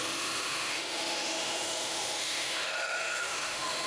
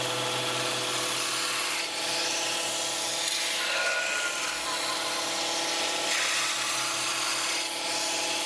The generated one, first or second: first